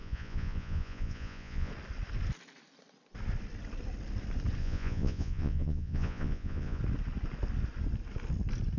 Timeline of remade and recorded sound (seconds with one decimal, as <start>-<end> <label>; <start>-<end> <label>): 0.0-1.7 remade; 1.7-4.6 recorded; 4.6-6.8 remade; 6.8-8.8 recorded